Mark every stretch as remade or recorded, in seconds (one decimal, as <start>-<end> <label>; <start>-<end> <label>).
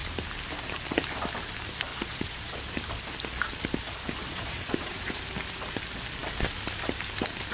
0.0-1.9 recorded; 1.9-2.6 remade; 2.6-4.2 recorded; 4.2-5.2 remade; 5.2-7.5 recorded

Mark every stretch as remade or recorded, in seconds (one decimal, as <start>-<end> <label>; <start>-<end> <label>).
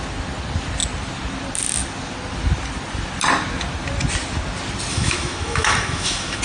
0.0-4.9 recorded; 4.9-6.4 remade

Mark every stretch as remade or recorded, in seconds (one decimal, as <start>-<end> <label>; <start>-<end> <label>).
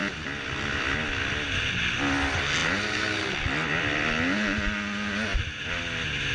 0.0-6.3 recorded